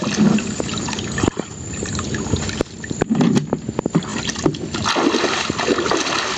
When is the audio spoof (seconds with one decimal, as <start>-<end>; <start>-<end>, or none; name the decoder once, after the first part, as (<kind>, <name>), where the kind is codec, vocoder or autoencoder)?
none